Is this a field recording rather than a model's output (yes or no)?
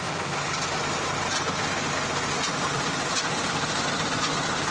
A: yes